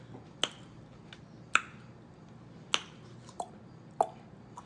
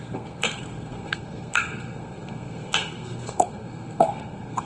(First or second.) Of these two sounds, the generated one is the second